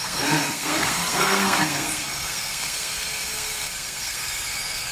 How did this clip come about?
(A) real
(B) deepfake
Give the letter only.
B